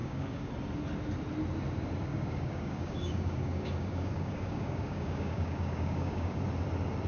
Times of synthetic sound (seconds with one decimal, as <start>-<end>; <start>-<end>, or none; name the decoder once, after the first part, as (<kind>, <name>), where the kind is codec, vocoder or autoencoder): 0.0-0.5 (codec, DAC); 2.1-6.4

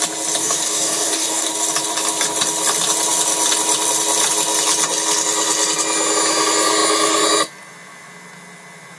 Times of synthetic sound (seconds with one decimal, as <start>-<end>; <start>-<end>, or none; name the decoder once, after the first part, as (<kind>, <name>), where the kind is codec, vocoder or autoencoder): 0.4-1.5 (codec, DAC)

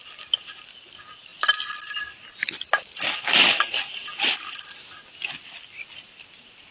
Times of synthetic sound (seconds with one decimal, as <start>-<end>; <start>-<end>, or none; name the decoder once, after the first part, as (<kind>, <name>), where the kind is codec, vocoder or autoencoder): none

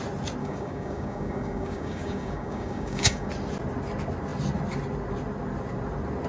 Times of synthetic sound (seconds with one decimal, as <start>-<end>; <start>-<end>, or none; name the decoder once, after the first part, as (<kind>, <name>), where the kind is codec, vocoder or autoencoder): 0.4-3.3 (codec, DAC)

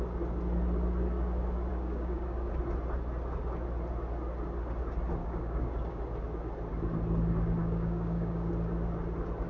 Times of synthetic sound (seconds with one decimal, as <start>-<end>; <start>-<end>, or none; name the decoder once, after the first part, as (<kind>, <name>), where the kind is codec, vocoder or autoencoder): 1.7-2.5 (codec, DAC); 5.2-6.0; 7.6-8.5

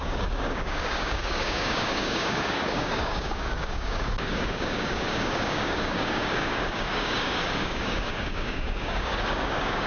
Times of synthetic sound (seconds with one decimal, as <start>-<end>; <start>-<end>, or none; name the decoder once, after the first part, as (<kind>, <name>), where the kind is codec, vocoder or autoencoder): 0.0-9.9 (codec, DAC)

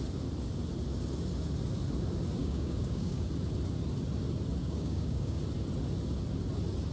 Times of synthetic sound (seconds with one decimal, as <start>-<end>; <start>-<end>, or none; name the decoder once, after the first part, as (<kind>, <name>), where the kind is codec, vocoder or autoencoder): 2.4-3.3 (codec, DAC); 4.6-5.4

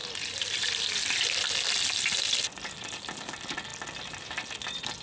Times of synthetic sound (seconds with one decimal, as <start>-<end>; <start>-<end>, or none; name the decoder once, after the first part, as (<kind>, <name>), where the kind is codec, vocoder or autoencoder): none